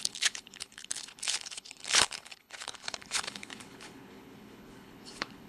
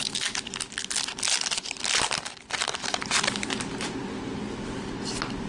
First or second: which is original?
second